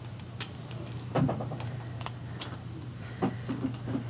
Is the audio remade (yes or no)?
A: no